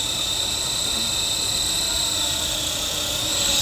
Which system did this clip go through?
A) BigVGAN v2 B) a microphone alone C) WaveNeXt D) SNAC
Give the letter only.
B